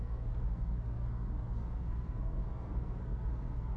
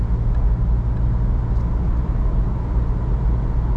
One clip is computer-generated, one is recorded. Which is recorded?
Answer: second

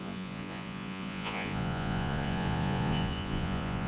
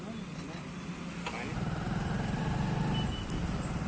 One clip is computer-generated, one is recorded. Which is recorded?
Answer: second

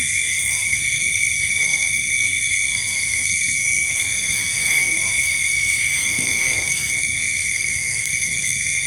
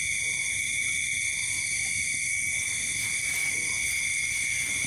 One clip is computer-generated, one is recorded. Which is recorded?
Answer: second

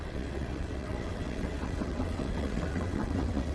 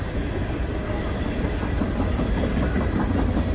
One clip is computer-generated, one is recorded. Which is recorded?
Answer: second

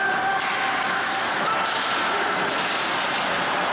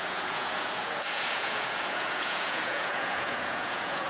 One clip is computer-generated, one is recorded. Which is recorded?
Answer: first